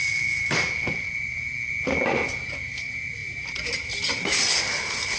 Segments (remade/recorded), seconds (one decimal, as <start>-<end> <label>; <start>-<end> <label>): 0.0-5.2 recorded